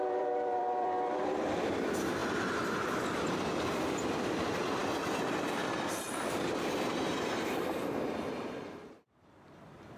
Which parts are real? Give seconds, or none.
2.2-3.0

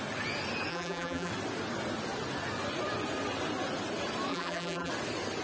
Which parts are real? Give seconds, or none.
0.0-0.7; 1.3-4.3; 4.9-5.4

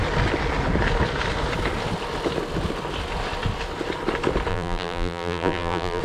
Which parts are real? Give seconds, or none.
0.0-4.5

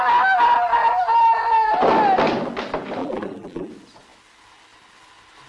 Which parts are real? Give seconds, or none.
0.0-3.0; 3.7-5.5

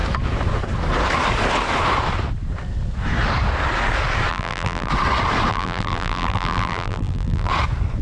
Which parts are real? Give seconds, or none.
0.0-4.3; 4.9-5.5; 7.5-8.0

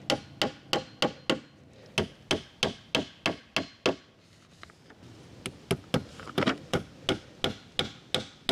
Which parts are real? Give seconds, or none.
0.0-6.1; 6.9-8.5

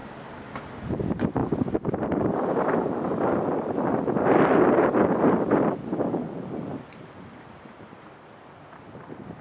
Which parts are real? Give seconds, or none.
0.0-1.4; 6.3-9.4